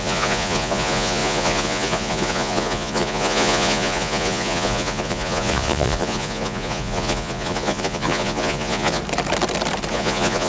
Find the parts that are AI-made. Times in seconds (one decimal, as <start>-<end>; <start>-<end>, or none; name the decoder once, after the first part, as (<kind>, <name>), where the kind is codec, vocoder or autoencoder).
0.0-9.0 (vocoder, Vocos); 9.9-10.5